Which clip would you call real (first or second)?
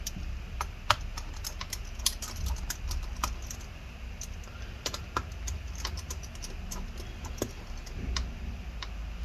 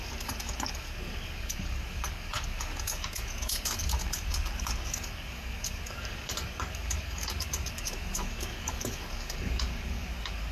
first